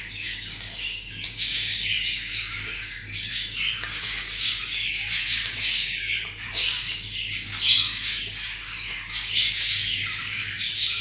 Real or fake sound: fake